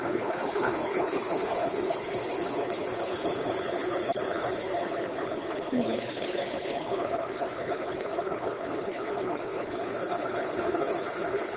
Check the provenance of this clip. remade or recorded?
remade